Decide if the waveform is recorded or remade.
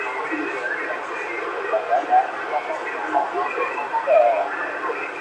recorded